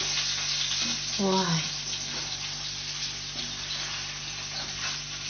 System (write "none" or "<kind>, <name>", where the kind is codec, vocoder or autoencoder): none